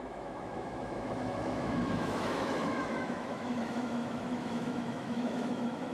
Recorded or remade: remade